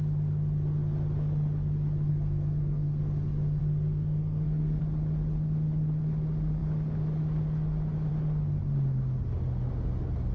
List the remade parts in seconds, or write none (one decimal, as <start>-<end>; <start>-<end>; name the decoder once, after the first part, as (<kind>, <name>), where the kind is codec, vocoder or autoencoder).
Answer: 2.1-3.0 (codec, SNAC); 3.6-4.8